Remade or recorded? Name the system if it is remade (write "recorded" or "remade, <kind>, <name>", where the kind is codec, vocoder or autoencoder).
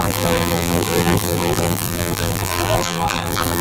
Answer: remade, vocoder, BigVGAN v2